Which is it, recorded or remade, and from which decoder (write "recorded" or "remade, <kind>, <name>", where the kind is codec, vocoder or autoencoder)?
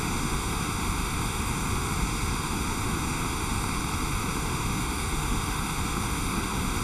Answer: remade, autoencoder, DAC-VAE